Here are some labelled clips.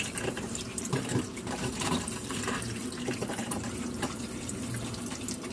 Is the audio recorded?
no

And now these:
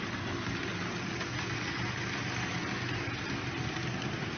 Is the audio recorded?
yes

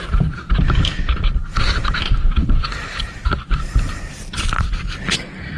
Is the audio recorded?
no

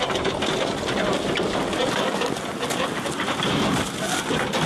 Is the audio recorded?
yes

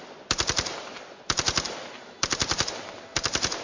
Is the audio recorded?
yes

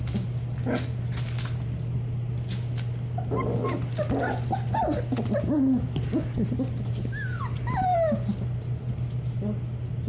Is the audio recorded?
yes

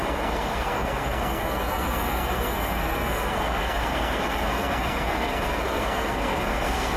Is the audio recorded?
no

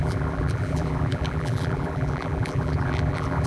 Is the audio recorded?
no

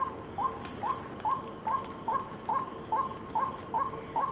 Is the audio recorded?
yes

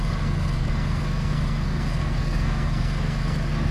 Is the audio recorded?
no